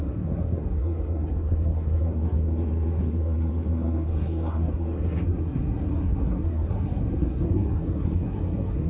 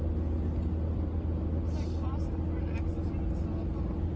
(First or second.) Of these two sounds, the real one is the second